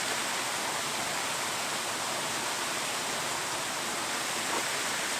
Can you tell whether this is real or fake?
real